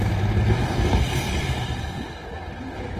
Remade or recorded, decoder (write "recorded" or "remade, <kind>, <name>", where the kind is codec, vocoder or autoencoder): remade, vocoder, BigVGAN v2